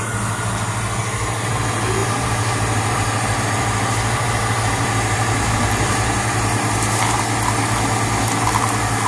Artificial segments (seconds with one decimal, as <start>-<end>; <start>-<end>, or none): 2.0-7.2